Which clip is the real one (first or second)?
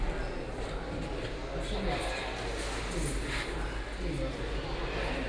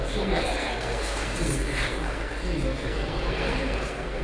first